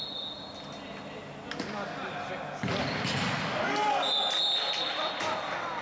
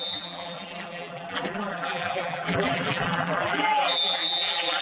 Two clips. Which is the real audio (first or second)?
first